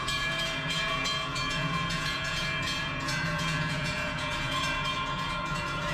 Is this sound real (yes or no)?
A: no